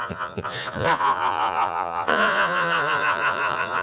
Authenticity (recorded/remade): remade